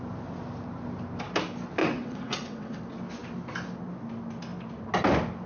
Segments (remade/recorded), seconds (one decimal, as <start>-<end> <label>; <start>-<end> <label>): 0.0-1.8 recorded; 1.8-2.8 remade; 2.8-5.5 recorded